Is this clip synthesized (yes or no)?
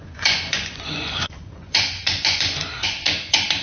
yes